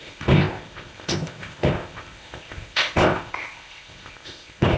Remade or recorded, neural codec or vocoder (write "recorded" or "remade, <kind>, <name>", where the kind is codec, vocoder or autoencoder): remade, codec, ZipCodec